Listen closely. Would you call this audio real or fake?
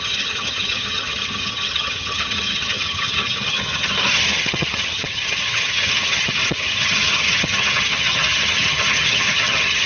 fake